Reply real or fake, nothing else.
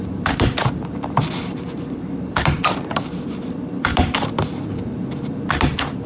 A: fake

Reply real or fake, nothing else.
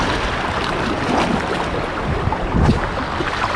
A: fake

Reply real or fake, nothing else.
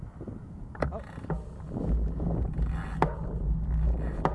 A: real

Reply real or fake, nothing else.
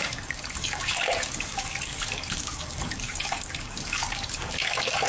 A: fake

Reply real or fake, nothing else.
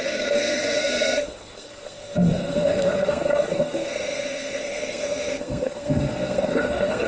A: fake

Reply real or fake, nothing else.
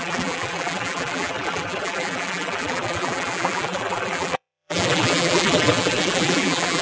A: fake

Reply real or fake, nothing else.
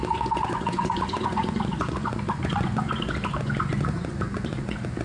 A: fake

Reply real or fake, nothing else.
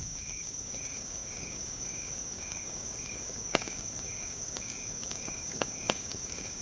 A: fake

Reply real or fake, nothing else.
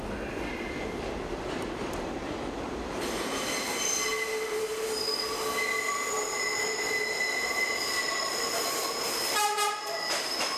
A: real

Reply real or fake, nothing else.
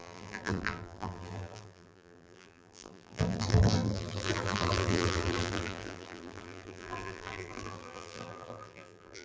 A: fake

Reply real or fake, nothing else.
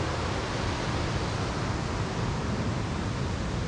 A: real